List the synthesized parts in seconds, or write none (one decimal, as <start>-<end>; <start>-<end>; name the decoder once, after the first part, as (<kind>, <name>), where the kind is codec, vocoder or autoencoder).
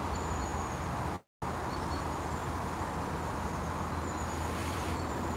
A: 2.4-2.9 (vocoder, BigVGAN v2); 4.6-5.4